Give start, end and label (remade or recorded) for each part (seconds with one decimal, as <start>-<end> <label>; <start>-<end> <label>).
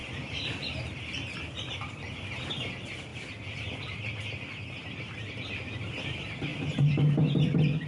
0.0-2.5 remade; 2.5-3.1 recorded; 3.1-4.1 remade; 4.1-7.9 recorded